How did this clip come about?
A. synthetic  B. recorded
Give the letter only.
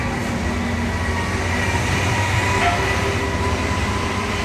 B